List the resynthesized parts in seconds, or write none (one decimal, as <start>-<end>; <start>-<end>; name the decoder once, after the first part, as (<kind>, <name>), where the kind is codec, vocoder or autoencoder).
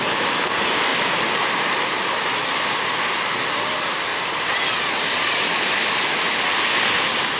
none